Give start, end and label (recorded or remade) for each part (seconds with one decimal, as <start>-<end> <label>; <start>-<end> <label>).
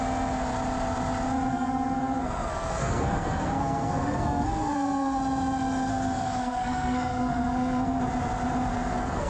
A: 0.0-1.5 recorded; 1.5-5.2 remade; 5.2-5.9 recorded; 5.9-8.0 remade; 8.0-8.7 recorded; 8.7-9.3 remade